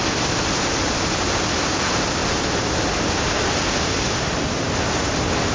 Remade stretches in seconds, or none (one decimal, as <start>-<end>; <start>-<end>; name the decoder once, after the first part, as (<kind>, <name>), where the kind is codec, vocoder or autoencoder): none